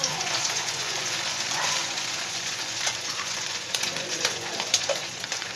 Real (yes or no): no